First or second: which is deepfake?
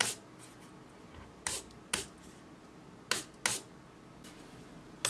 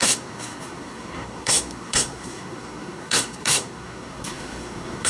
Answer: second